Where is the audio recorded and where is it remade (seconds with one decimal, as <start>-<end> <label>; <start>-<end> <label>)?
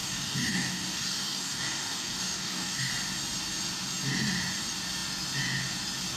0.0-2.9 remade; 2.9-6.2 recorded